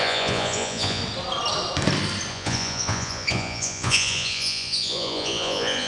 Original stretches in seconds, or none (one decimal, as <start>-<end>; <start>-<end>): 1.0-2.3